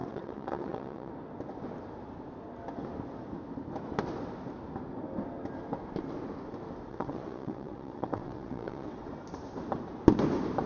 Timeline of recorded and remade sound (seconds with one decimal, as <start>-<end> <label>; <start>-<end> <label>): 0.0-1.1 remade; 1.1-6.9 recorded; 6.9-9.1 remade; 9.1-10.7 recorded